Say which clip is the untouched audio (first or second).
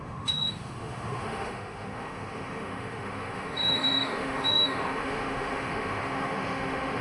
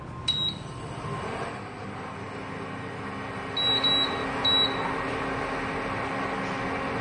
second